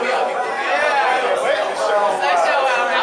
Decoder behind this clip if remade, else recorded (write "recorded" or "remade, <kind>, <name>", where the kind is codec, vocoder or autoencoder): recorded